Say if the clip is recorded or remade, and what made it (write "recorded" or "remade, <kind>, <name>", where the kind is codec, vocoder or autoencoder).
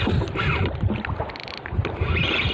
recorded